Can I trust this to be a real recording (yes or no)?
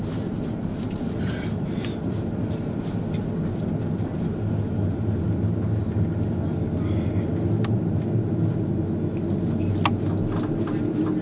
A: yes